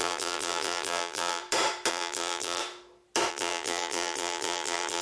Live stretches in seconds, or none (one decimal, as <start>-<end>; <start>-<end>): 1.4-1.9; 2.6-3.3